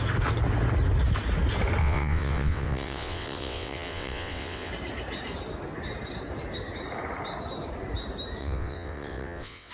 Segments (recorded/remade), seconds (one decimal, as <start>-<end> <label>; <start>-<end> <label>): 0.0-1.8 recorded; 1.8-4.7 remade; 4.7-8.4 recorded; 8.4-9.7 remade